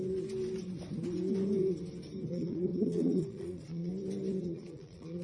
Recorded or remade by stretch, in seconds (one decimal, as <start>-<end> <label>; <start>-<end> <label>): 0.0-2.3 recorded; 2.3-3.9 remade; 3.9-4.4 recorded; 4.4-5.2 remade